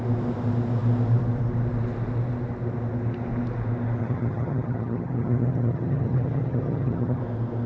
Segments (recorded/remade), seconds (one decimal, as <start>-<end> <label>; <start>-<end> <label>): 0.0-4.0 recorded; 4.0-7.2 remade; 7.2-7.7 recorded